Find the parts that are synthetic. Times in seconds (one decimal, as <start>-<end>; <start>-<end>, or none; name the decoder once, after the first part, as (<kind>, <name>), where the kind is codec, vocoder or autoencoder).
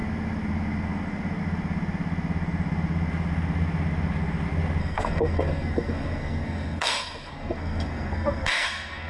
4.8-9.1 (codec, SNAC)